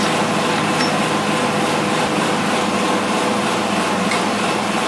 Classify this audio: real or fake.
real